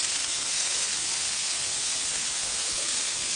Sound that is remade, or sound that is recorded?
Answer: remade